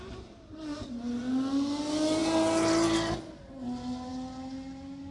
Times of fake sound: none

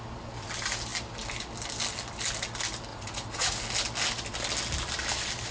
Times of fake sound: 2.9-3.6